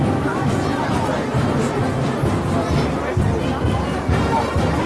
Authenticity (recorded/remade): recorded